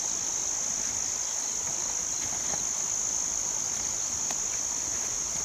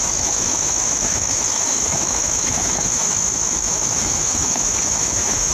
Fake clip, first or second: second